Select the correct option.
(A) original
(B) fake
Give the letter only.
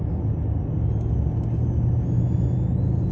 A